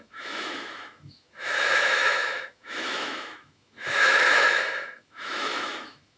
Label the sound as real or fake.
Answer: fake